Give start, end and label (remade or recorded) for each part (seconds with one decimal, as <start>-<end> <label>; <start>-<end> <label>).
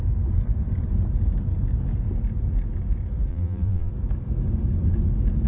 0.0-3.3 recorded; 3.3-3.9 remade; 3.9-5.5 recorded